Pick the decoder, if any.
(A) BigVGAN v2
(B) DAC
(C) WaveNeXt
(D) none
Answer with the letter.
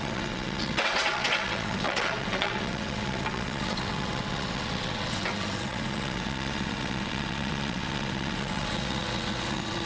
C